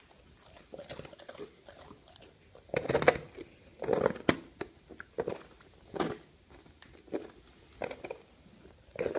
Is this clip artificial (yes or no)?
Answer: no